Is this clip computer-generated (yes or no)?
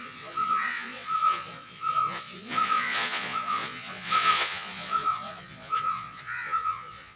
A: yes